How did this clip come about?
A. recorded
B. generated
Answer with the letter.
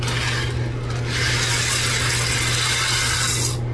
A